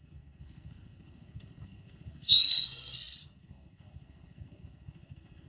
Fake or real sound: fake